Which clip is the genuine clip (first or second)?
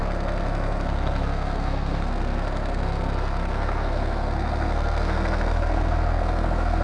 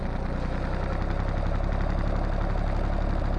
second